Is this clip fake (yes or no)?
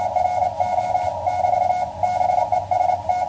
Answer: no